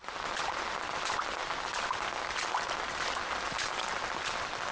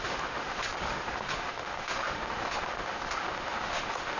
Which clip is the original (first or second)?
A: first